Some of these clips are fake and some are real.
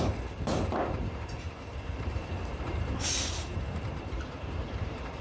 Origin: fake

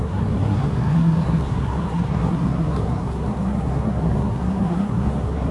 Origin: fake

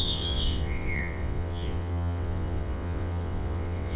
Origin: fake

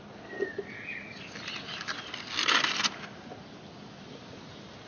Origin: real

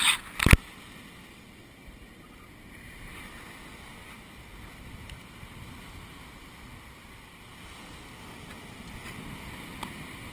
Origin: real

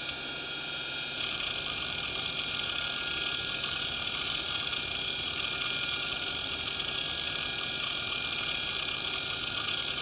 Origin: real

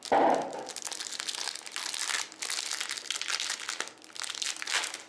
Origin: real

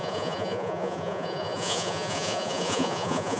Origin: fake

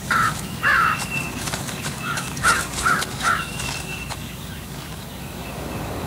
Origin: fake